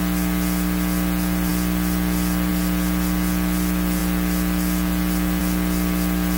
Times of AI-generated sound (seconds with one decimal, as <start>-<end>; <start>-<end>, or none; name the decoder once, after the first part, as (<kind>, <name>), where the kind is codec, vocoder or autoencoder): none